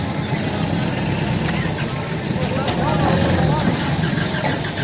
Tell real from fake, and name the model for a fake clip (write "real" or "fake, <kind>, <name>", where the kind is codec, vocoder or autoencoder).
real